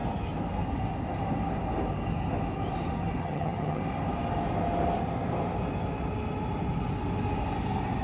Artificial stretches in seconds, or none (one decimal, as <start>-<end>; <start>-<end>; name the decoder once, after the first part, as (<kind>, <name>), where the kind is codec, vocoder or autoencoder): 3.2-3.8 (vocoder, HiFi-GAN)